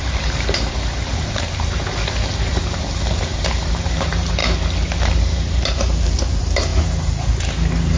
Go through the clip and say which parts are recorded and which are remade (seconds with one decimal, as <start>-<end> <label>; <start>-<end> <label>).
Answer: 0.0-1.8 remade; 1.8-2.5 recorded; 2.5-4.4 remade; 4.4-5.0 recorded; 5.0-6.7 remade; 6.7-8.0 recorded